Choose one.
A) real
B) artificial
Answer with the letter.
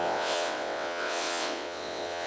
B